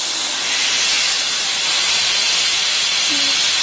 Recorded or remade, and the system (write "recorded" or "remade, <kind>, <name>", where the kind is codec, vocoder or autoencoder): recorded